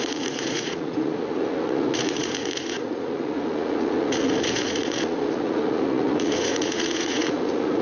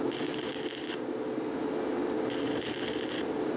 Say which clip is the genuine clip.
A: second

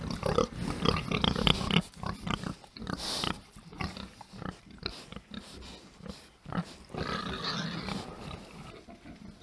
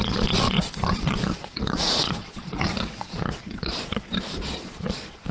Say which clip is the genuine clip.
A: first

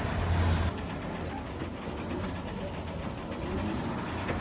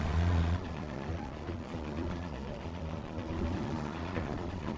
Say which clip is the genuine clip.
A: first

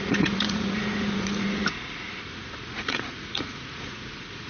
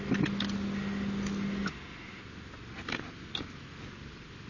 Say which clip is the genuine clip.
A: second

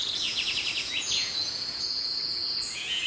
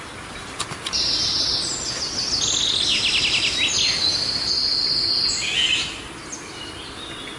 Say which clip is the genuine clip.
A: second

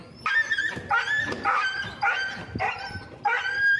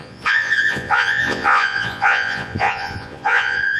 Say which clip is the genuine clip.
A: first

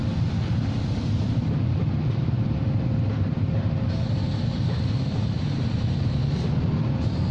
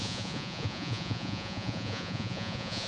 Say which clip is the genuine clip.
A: first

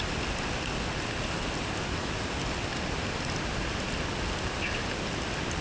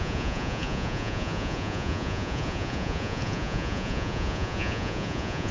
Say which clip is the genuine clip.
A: first